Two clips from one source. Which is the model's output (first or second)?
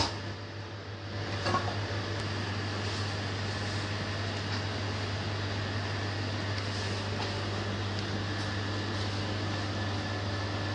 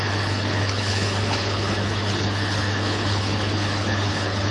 second